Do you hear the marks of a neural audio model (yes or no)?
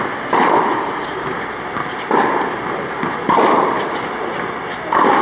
no